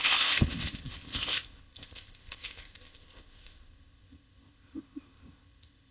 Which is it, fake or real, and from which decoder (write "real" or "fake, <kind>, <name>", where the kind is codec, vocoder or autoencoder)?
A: fake, codec, ZipCodec